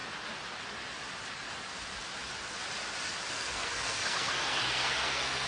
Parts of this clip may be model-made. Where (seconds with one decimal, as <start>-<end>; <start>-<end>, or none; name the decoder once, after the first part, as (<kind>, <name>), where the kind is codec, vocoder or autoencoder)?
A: 3.3-5.5 (codec, SNAC)